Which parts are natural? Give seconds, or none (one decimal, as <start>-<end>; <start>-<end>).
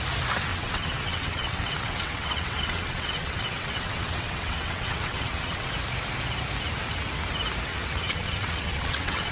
0.0-0.5; 5.7-7.7